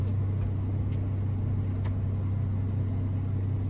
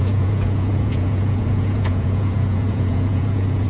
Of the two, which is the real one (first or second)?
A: first